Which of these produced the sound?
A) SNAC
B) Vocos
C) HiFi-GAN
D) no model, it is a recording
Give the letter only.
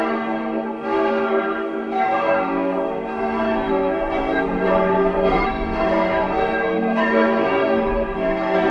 A